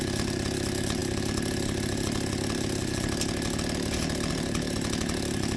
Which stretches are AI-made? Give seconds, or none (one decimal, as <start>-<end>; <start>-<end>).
none